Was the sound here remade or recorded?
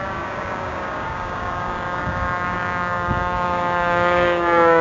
remade